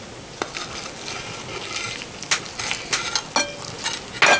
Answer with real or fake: real